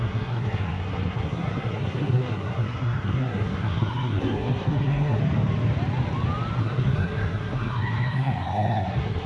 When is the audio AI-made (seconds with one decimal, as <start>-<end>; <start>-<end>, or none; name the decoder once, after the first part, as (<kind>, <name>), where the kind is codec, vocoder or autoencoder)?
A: 0.0-5.2 (codec, SNAC); 6.6-9.3